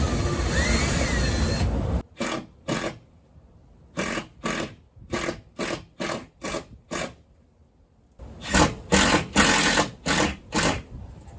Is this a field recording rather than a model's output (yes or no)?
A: yes